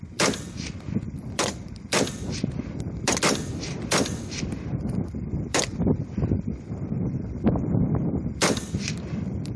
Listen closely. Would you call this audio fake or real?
fake